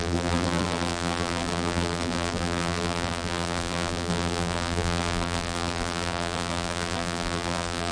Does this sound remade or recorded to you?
remade